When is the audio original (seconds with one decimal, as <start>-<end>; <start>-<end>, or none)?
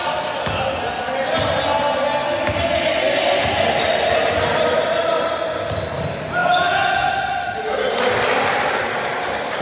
0.0-6.4; 7.1-9.6